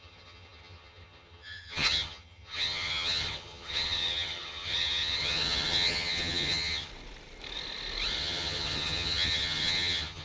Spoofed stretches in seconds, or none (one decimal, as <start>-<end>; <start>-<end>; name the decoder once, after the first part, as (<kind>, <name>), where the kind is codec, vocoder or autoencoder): 0.0-6.9 (vocoder, HiFi-GAN); 8.2-10.2